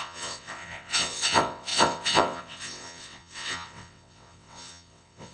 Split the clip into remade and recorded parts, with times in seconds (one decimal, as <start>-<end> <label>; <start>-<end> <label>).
0.0-5.3 remade